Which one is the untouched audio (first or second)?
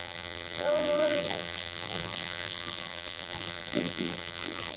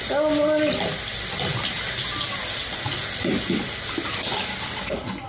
second